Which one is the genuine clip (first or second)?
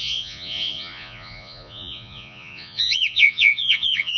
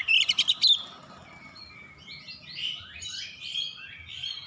second